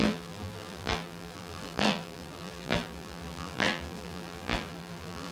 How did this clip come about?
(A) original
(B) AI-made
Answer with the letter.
B